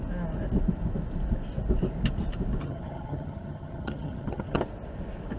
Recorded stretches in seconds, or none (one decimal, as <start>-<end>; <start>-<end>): 0.0-2.6; 4.6-5.4